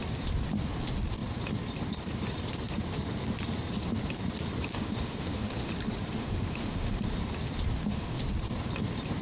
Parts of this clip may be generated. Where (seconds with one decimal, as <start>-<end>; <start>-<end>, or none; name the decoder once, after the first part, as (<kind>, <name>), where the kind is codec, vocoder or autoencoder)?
4.7-5.7 (autoencoder, DAC-VAE); 6.2-7.0; 7.7-8.2